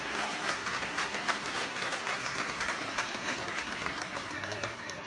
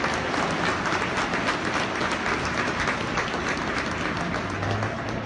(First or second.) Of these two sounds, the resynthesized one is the first